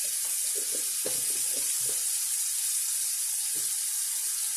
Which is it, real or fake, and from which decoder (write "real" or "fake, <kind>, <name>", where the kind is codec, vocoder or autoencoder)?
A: real